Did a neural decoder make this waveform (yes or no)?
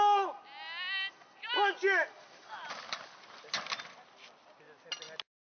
no